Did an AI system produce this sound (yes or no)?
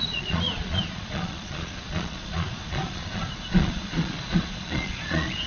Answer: yes